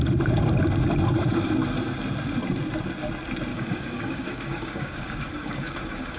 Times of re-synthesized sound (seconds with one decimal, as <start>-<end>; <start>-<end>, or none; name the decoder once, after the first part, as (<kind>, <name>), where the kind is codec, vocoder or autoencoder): 3.5-6.2 (codec, DAC)